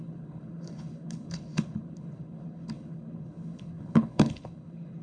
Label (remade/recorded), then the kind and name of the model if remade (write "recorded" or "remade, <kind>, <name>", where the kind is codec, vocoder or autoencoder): remade, codec, HILCodec